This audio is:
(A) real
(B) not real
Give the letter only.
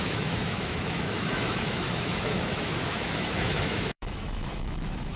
B